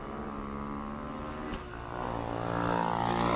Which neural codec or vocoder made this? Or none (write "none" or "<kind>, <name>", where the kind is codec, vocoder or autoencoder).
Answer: none